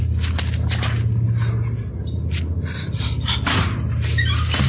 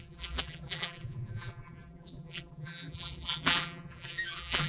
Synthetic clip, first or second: second